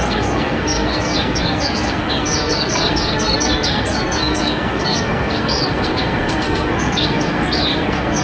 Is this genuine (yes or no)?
no